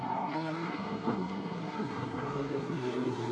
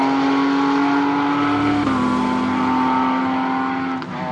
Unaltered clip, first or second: second